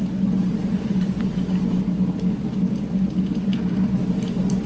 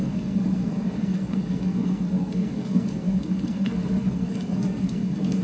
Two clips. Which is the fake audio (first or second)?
second